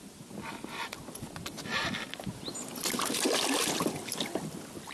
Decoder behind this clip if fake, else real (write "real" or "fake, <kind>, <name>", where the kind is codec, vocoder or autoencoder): real